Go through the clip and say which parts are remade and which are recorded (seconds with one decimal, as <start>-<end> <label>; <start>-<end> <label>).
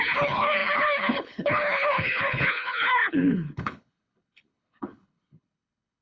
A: 0.0-6.0 remade